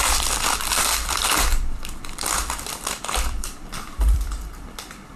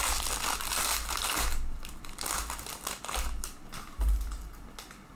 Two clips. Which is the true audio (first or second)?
second